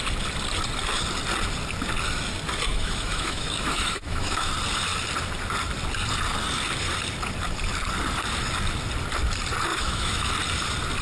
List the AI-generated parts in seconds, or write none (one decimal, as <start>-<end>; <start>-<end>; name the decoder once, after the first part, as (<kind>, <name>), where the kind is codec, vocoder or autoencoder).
2.7-4.5 (autoencoder, DAC-VAE); 9.7-10.3